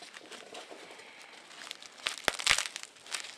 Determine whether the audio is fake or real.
real